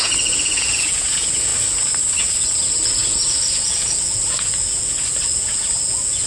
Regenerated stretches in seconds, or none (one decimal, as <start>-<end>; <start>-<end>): 0.0-1.5; 2.2-6.3